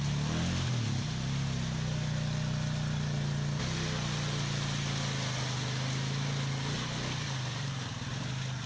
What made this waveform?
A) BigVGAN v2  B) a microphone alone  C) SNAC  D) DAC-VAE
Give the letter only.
B